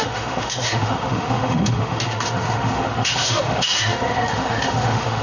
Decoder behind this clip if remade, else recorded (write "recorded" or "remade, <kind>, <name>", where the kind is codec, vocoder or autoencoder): remade, autoencoder, DAC-VAE